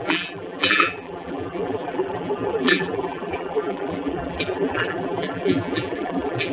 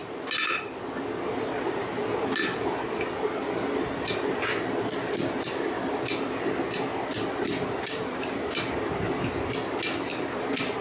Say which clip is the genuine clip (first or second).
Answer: second